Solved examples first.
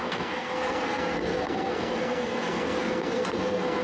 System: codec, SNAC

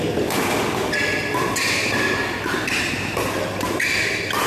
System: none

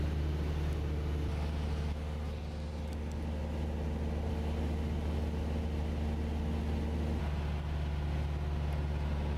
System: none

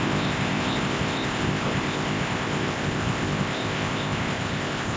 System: codec, ZipCodec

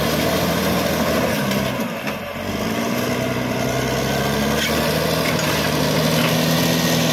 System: none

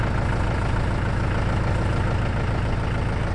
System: none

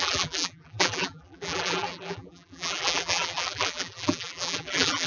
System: vocoder, BigVGAN v2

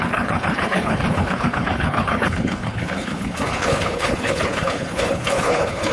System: codec, HILCodec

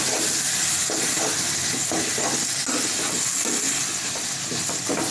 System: none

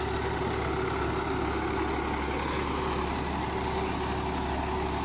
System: none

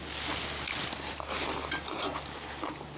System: none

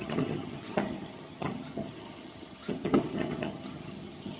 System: vocoder, HiFi-GAN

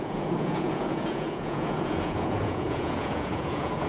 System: vocoder, Vocos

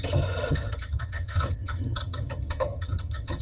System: vocoder, HiFi-GAN